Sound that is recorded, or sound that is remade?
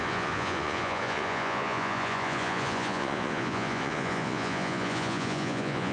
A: remade